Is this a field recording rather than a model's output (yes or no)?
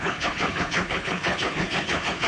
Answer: no